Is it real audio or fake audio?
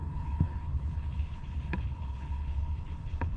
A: fake